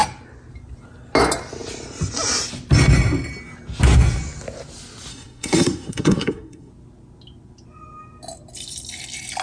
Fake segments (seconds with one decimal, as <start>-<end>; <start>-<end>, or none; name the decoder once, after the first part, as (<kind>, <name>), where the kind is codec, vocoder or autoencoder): 5.1-6.7 (codec, SNAC)